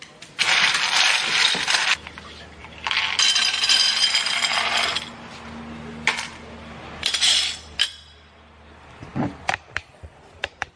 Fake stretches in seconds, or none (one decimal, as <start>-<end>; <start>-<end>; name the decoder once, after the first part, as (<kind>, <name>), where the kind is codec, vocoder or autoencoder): 0.0-2.6 (vocoder, BigVGAN v2); 7.0-10.8